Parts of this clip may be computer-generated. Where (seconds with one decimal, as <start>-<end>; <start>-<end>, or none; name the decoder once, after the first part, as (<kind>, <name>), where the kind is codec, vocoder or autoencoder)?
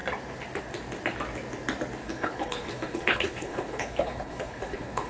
2.0-5.1 (codec, HILCodec)